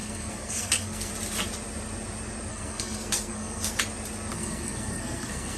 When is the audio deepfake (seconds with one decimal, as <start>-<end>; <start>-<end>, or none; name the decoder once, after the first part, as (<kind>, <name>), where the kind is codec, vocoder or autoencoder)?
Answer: 0.0-1.1 (codec, SNAC); 2.5-3.8; 4.3-5.6